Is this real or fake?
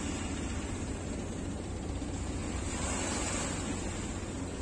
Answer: real